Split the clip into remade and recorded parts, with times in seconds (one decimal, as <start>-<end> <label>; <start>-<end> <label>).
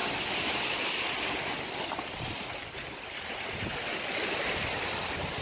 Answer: 0.0-5.4 recorded